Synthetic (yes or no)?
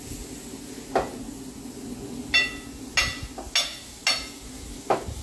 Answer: no